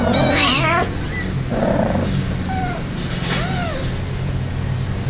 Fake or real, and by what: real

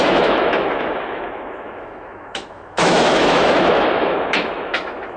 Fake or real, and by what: fake, autoencoder, DAC-VAE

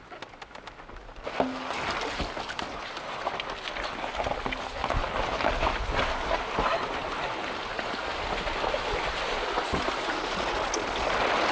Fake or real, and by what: real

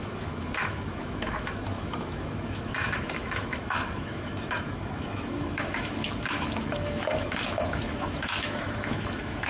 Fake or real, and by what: fake, autoencoder, DAC-VAE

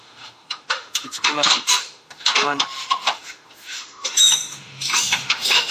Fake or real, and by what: fake, autoencoder, DAC-VAE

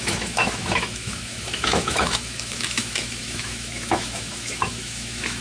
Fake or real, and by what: fake, autoencoder, DAC-VAE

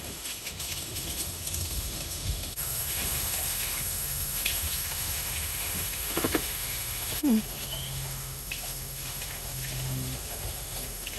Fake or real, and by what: fake, autoencoder, DAC-VAE